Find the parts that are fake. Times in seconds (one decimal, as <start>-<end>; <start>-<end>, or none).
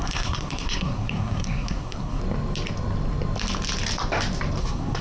0.0-2.2; 4.6-5.0